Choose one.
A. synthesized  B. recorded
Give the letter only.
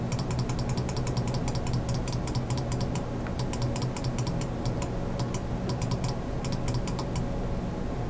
B